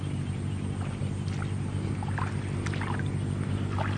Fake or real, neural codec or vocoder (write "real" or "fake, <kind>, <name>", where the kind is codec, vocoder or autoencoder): real